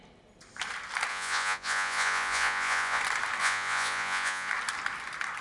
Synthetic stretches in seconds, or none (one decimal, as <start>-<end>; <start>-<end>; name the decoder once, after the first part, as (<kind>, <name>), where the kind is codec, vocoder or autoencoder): 1.1-3.0 (vocoder, Vocos); 3.4-4.5